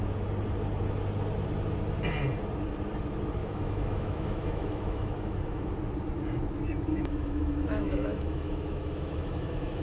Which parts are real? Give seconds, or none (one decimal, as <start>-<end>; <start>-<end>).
0.0-3.4; 5.7-6.9